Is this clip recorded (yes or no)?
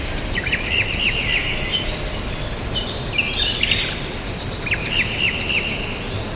yes